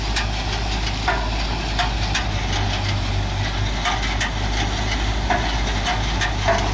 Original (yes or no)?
yes